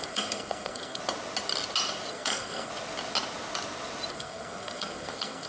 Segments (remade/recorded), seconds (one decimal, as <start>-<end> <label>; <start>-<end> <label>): 0.0-1.0 remade; 1.0-2.1 recorded; 2.1-2.7 remade; 2.7-4.1 recorded; 4.1-5.5 remade